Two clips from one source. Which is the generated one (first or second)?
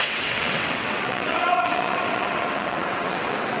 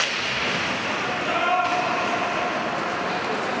first